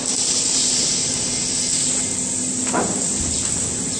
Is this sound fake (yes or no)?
no